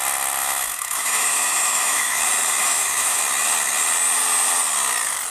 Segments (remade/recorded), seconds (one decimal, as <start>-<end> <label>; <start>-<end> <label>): 0.0-0.4 recorded; 0.4-2.2 remade; 2.2-2.6 recorded; 2.6-3.2 remade; 3.2-5.3 recorded